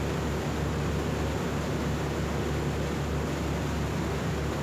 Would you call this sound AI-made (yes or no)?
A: no